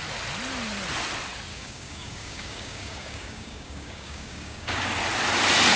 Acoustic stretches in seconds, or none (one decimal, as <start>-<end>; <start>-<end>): 0.0-1.5; 4.8-5.8